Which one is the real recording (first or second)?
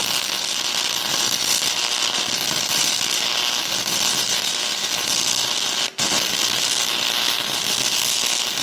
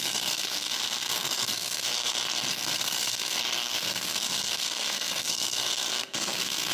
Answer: first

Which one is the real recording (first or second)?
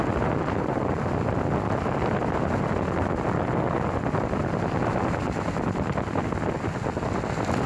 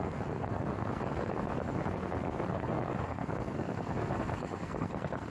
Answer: first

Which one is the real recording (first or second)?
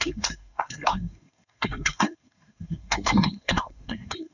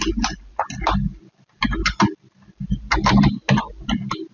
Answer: second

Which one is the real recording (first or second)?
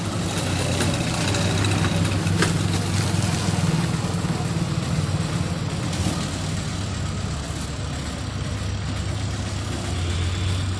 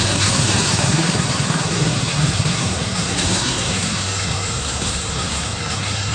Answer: first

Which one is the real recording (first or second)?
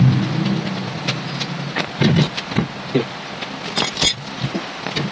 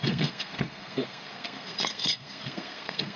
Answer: first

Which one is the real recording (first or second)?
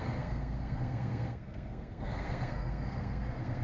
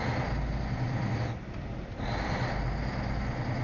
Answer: second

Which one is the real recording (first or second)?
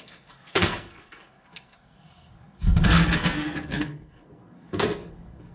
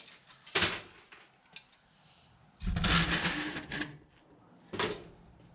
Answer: second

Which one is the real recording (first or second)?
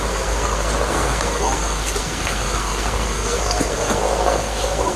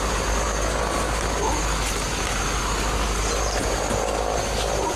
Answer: second